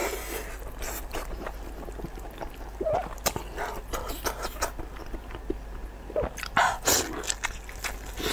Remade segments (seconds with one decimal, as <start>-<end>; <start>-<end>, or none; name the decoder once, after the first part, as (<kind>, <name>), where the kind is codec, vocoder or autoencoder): none